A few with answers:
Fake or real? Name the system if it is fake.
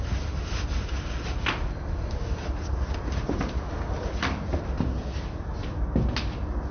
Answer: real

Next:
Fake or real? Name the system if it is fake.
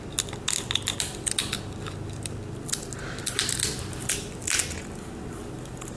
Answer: real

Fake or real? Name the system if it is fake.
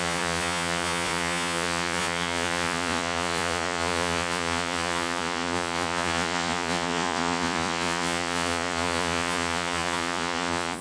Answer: fake, vocoder, Vocos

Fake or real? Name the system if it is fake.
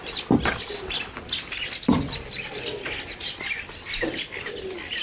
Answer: real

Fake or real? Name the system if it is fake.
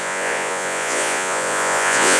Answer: fake, vocoder, Vocos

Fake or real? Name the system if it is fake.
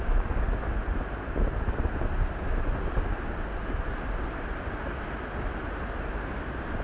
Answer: real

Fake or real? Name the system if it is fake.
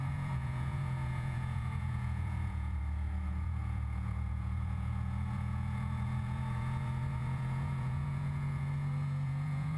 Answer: fake, vocoder, Vocos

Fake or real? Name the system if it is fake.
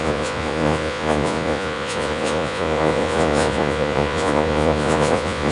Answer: fake, vocoder, Vocos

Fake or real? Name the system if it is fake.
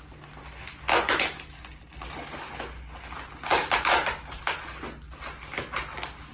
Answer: real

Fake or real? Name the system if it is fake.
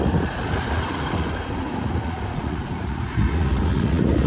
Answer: fake, vocoder, Vocos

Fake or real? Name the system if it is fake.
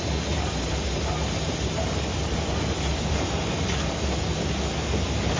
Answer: real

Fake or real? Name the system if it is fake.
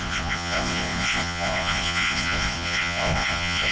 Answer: fake, vocoder, Vocos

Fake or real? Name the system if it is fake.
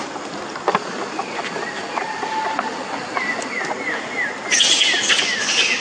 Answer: real